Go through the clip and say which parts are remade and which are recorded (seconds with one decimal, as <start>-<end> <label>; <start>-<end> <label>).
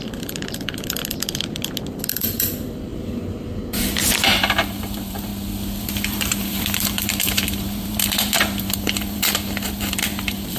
0.0-1.0 remade; 1.0-2.1 recorded; 2.1-5.3 remade; 5.3-5.8 recorded; 5.8-10.6 remade